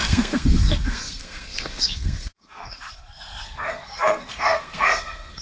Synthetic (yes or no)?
yes